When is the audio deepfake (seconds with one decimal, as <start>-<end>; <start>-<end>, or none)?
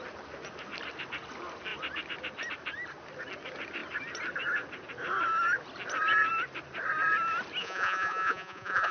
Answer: 7.6-8.9